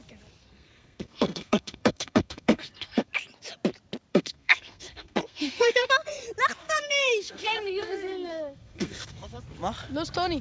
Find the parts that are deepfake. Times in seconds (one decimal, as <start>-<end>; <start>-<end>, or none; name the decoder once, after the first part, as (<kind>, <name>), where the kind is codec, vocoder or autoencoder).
0.4-3.1 (codec, SNAC); 4.1-5.9; 6.6-9.4